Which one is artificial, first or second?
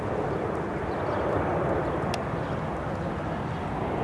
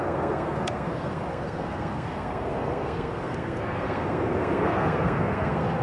second